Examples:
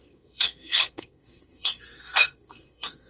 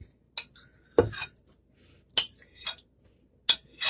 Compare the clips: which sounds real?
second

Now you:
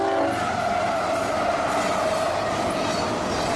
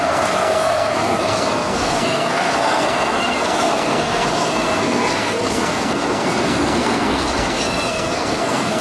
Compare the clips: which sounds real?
first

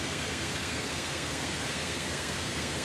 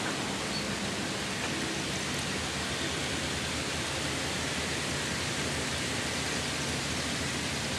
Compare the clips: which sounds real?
second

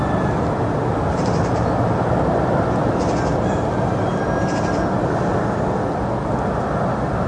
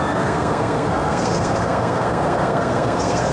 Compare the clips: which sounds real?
first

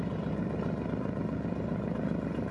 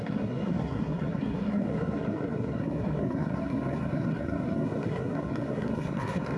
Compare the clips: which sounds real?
first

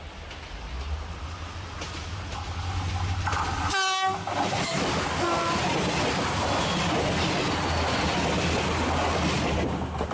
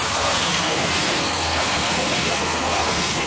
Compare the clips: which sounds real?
first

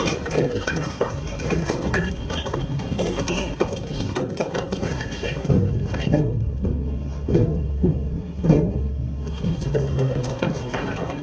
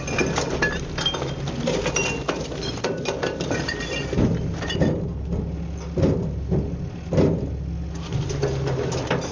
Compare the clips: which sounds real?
second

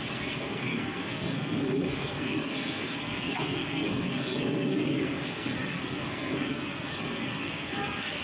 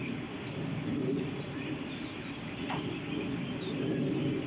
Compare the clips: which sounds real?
second